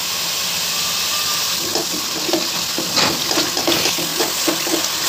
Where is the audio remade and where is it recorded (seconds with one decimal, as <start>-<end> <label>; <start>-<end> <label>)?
0.0-5.1 recorded